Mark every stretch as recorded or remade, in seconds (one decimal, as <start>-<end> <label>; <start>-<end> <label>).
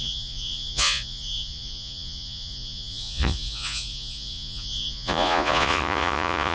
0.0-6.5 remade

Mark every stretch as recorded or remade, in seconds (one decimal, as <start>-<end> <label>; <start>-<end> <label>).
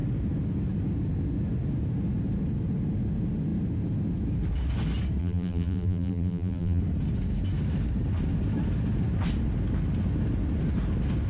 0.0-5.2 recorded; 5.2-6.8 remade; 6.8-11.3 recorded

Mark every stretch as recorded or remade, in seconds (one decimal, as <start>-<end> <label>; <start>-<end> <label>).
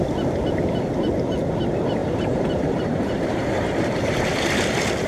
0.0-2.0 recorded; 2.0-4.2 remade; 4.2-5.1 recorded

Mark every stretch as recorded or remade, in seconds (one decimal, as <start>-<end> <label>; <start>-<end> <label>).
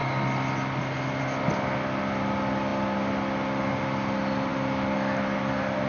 0.0-5.9 recorded